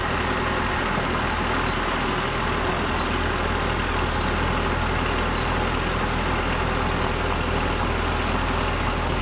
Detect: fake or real real